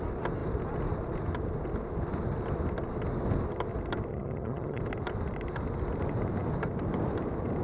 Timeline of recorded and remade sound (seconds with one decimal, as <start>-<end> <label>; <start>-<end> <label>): 0.0-4.1 recorded; 4.1-4.8 remade; 4.8-7.6 recorded